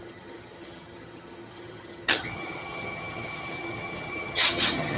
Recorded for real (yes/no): no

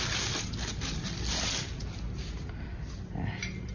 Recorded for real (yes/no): yes